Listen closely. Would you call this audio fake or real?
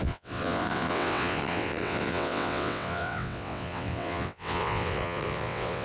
fake